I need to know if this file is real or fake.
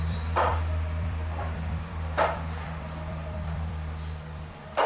fake